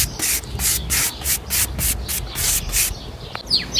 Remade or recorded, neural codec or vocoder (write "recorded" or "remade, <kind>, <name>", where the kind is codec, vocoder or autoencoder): recorded